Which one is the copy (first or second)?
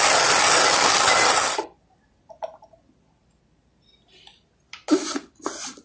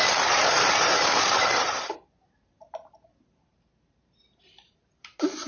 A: second